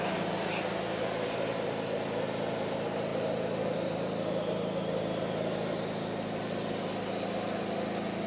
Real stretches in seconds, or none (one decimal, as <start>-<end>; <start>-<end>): 0.0-8.3